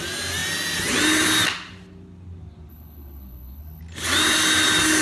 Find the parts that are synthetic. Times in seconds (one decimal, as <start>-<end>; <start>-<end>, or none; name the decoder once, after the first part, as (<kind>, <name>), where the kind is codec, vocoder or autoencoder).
2.7-3.8 (codec, HILCodec)